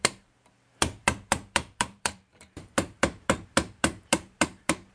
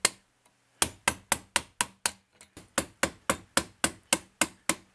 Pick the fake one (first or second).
first